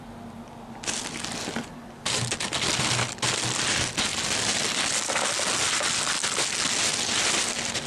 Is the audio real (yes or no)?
yes